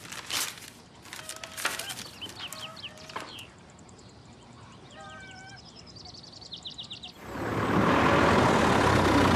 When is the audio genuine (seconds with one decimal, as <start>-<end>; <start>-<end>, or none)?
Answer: 0.0-2.7; 5.6-9.4